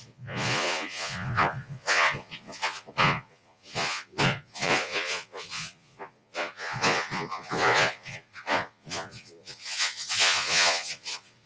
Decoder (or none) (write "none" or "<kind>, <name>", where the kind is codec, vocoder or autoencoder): vocoder, Vocos